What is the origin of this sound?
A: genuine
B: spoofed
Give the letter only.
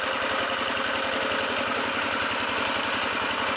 A